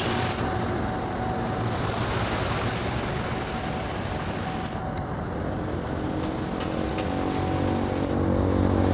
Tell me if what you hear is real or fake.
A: real